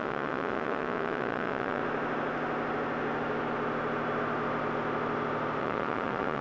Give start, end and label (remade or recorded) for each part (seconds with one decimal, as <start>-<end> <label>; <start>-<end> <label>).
0.0-1.8 remade; 1.8-5.6 recorded; 5.6-6.4 remade